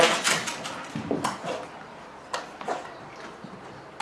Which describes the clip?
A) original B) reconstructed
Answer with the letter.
A